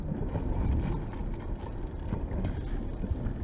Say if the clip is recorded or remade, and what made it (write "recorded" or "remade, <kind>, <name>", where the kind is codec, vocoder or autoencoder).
recorded